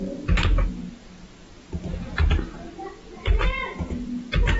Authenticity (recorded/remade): recorded